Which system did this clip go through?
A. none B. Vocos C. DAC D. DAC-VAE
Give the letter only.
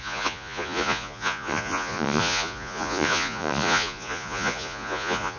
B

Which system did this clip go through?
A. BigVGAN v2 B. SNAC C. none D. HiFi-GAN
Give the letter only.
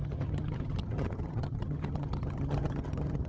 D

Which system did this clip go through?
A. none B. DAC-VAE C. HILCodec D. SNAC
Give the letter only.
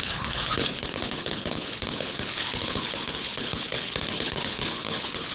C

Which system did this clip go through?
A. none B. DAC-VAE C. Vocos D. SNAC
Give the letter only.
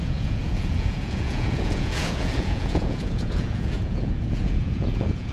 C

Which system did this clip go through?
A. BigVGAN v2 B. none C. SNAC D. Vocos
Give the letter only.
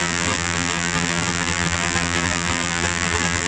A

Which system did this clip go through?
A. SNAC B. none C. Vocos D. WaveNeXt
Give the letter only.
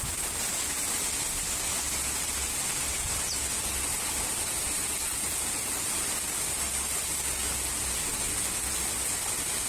B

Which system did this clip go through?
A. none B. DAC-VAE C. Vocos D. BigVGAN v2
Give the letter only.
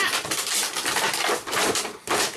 D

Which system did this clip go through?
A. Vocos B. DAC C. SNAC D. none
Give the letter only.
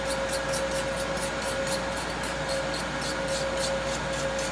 D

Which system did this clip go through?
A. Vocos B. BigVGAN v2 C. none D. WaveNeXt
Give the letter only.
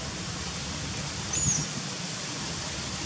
C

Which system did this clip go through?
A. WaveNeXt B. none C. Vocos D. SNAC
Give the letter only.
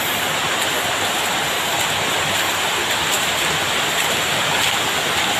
B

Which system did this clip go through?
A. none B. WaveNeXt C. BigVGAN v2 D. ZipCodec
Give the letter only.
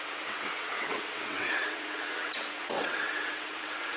B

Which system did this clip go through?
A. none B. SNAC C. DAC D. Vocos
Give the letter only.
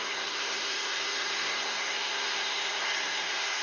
B